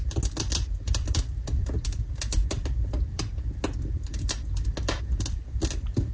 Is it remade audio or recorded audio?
recorded